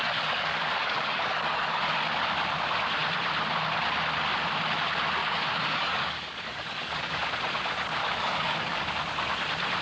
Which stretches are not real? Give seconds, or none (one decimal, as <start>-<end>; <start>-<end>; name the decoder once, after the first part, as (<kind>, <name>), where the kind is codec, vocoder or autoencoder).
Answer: 0.0-1.8 (codec, DAC); 5.2-7.2; 8.0-8.9